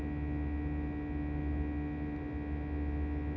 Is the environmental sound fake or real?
real